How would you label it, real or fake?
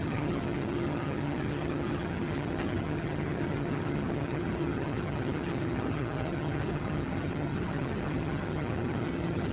fake